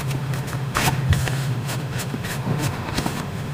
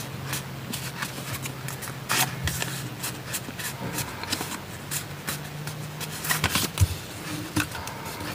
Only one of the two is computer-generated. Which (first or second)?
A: first